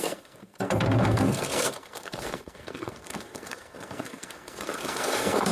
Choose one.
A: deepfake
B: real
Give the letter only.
A